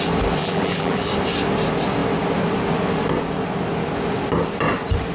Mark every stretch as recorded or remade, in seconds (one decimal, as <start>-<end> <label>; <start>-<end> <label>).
0.0-0.4 recorded; 0.4-1.1 remade; 1.1-5.1 recorded